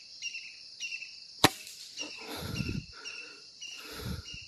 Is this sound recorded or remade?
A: remade